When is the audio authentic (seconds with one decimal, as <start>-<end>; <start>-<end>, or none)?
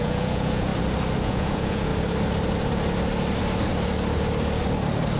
0.7-1.2; 1.9-5.2